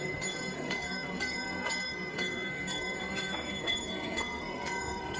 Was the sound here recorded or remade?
remade